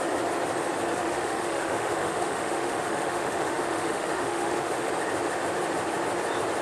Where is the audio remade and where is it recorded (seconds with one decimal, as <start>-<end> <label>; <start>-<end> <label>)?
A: 0.0-0.9 recorded; 0.9-4.9 remade; 4.9-6.6 recorded